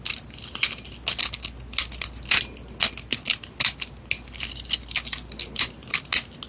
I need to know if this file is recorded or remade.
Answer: recorded